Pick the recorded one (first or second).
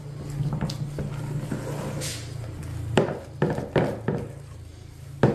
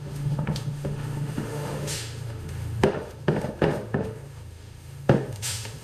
first